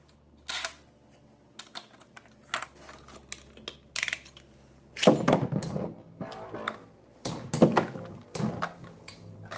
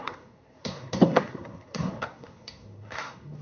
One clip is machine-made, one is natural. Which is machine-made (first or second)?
second